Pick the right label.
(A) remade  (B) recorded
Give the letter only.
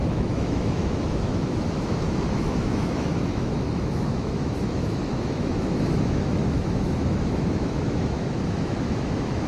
A